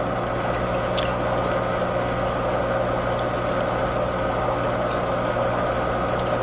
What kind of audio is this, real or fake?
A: real